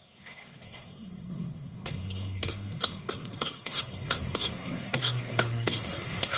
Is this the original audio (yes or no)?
no